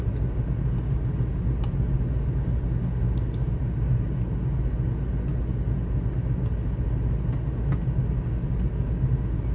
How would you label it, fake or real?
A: real